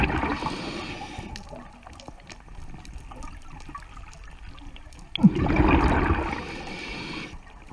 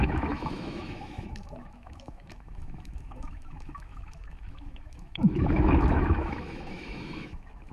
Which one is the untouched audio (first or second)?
first